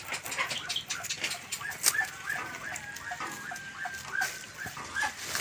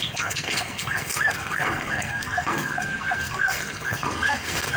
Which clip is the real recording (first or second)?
first